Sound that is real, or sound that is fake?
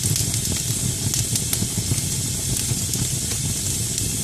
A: real